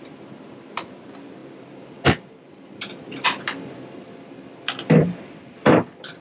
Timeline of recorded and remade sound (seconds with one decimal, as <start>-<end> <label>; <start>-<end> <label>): 0.0-6.2 remade

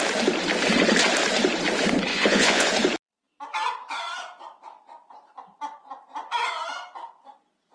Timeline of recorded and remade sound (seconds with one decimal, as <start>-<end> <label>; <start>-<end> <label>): 0.0-2.1 recorded; 2.1-2.7 remade; 2.7-7.7 recorded

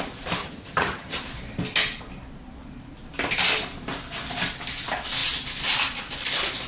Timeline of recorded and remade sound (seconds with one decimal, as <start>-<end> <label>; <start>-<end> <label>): 0.0-0.4 recorded; 0.4-1.2 remade; 1.2-6.7 recorded

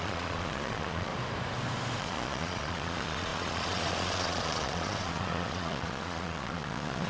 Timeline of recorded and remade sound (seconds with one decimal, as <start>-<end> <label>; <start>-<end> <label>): 0.0-1.1 remade; 1.1-2.0 recorded; 2.0-7.1 remade

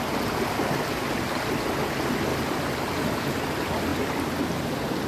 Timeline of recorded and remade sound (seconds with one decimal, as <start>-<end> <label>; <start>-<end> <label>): 0.0-2.3 recorded; 2.3-2.9 remade; 2.9-3.9 recorded; 3.9-4.4 remade; 4.4-5.1 recorded